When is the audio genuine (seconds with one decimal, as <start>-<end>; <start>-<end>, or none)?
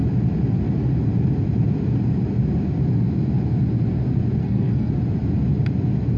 0.0-4.4; 4.9-6.2